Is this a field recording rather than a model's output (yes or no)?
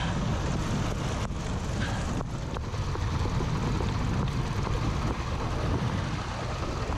yes